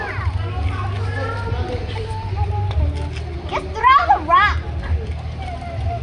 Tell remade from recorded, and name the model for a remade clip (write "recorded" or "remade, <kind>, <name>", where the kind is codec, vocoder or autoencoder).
recorded